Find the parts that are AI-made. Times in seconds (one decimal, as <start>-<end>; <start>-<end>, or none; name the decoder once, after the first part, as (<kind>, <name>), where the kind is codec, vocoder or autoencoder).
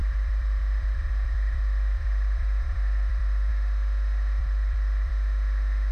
0.0-3.5 (vocoder, BigVGAN v2); 4.4-5.1